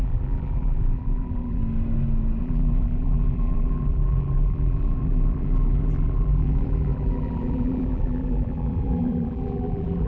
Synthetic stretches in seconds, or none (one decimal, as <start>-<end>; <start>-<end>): 0.0-1.6; 2.4-10.1